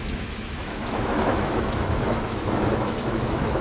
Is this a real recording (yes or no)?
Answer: no